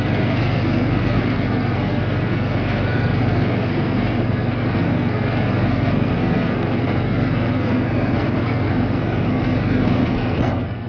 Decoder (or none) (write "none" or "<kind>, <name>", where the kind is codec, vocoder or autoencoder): codec, SNAC